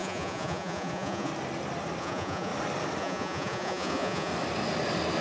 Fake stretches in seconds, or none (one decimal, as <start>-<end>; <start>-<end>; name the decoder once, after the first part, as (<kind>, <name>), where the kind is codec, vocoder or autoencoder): 0.0-1.3 (vocoder, Vocos); 2.0-2.5; 3.0-4.3